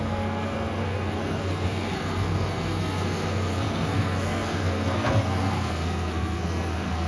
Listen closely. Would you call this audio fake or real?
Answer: fake